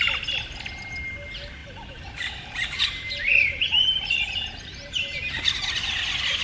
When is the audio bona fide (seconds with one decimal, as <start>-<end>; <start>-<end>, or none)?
0.0-1.6; 5.4-6.4